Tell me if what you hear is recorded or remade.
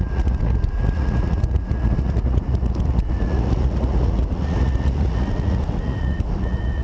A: remade